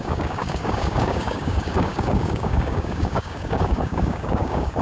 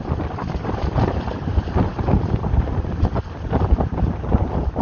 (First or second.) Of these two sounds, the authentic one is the second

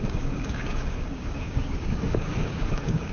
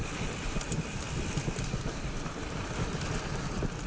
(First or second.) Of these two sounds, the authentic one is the second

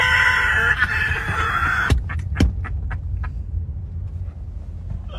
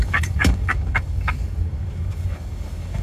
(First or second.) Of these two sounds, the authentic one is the first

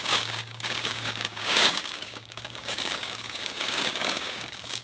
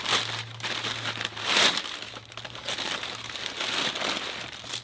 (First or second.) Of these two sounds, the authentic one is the second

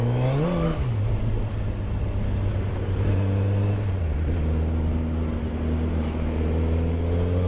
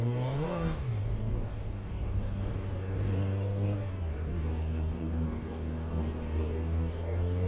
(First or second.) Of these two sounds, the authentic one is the first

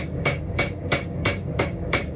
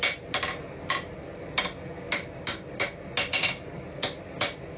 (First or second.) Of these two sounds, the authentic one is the second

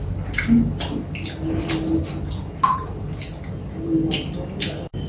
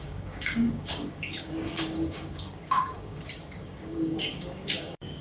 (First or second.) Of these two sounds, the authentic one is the first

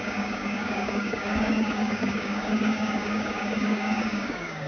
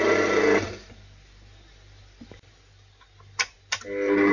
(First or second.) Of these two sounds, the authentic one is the second